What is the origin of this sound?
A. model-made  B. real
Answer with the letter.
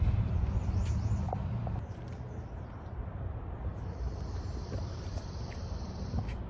A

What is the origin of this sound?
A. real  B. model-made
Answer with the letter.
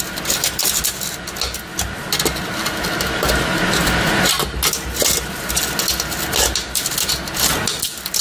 A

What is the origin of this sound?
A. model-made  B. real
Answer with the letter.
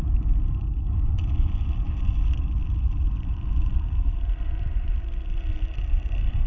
B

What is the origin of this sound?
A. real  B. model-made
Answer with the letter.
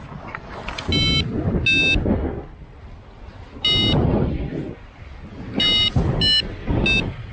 A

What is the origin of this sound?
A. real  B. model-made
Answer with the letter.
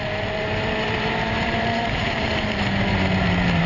B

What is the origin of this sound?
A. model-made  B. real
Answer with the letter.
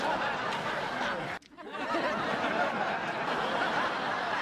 B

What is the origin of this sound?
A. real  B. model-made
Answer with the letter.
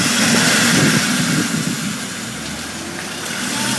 A